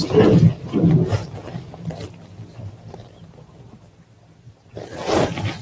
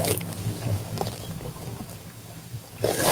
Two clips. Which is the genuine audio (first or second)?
first